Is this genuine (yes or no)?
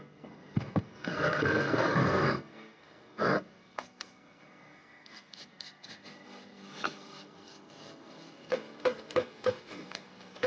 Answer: no